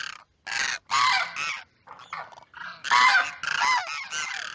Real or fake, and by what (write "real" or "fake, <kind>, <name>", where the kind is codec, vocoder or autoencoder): real